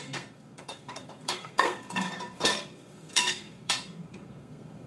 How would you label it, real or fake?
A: fake